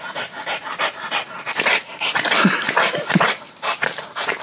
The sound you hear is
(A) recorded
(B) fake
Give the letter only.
A